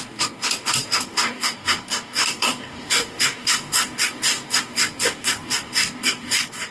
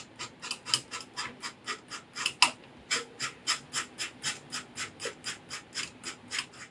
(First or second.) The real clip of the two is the second